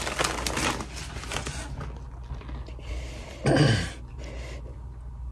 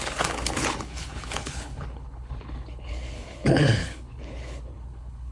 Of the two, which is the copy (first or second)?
second